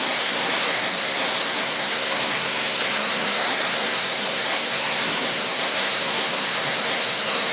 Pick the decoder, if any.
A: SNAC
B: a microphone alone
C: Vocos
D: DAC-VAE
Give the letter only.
A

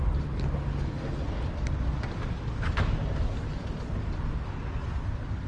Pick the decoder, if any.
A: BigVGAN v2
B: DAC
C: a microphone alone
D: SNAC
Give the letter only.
C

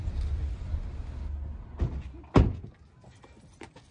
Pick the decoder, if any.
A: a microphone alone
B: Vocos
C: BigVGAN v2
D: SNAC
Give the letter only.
A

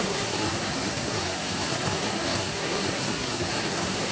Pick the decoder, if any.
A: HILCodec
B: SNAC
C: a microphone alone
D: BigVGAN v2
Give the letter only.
B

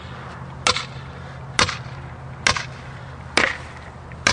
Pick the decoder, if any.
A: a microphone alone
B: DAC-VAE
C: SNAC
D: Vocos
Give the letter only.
A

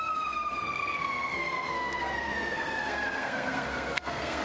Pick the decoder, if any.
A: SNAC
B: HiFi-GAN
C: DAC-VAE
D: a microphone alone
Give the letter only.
A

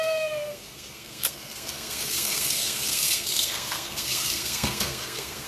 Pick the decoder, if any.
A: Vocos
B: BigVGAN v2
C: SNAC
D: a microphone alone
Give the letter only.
C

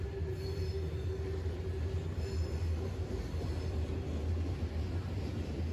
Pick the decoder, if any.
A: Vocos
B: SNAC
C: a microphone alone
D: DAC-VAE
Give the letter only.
C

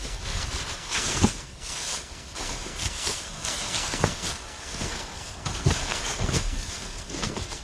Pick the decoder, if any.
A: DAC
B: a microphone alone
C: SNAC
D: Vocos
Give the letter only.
C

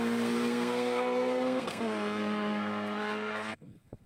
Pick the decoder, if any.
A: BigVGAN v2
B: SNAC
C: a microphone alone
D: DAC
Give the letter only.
B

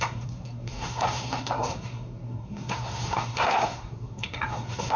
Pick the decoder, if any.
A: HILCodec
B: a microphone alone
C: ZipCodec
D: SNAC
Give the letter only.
D